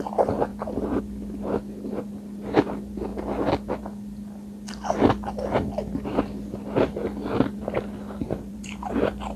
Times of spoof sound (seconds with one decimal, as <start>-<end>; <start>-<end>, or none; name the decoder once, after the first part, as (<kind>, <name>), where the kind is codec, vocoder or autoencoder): 0.5-1.0 (vocoder, BigVGAN v2); 8.2-9.0